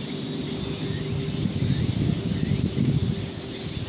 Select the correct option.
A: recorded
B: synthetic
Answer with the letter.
A